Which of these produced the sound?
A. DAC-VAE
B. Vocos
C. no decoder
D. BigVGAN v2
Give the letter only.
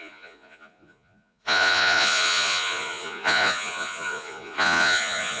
B